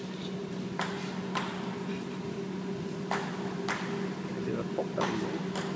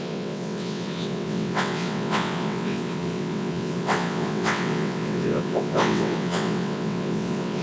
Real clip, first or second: first